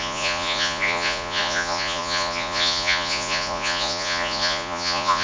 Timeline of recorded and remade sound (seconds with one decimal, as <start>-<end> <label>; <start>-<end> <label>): 0.0-5.2 remade